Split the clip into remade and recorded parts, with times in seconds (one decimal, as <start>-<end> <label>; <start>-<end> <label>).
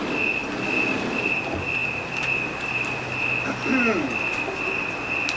0.0-5.4 recorded